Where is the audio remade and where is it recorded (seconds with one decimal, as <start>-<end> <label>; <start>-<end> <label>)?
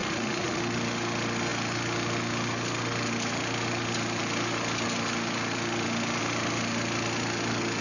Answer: 0.0-0.6 remade; 0.6-7.8 recorded